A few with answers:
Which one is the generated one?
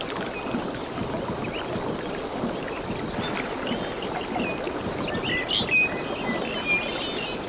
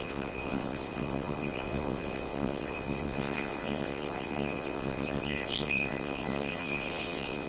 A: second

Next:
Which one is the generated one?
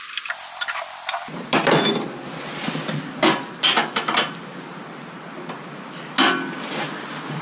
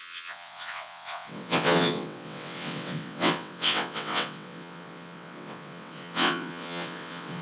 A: second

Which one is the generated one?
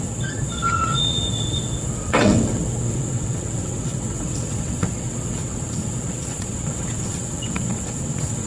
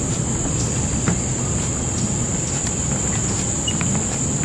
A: first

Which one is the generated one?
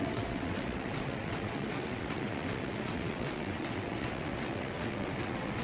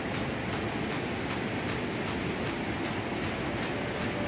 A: first